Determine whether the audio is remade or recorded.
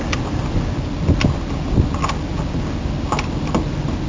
recorded